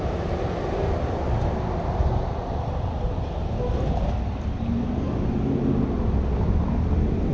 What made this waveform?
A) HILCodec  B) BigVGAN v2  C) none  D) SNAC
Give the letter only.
C